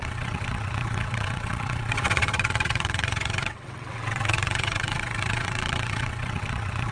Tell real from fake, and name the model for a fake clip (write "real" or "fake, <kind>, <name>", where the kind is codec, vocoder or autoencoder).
fake, vocoder, WaveNeXt